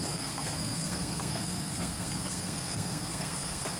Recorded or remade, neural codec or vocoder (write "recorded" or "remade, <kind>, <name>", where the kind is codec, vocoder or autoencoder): remade, codec, SNAC